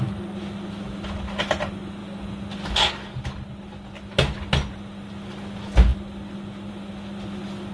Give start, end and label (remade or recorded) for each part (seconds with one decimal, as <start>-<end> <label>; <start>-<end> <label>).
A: 0.0-7.7 recorded